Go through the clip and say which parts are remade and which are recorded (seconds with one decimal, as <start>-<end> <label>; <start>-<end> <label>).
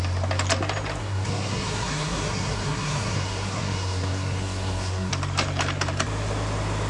0.0-1.0 recorded; 1.0-5.1 remade; 5.1-6.9 recorded